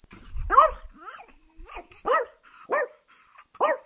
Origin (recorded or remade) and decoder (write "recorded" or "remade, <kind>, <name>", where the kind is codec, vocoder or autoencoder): recorded